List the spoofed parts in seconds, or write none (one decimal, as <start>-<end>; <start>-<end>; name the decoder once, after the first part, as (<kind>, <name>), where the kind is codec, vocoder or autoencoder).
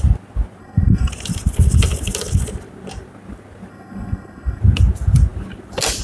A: 0.6-1.1 (codec, SNAC); 3.7-4.6